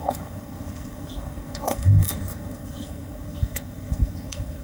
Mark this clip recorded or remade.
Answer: remade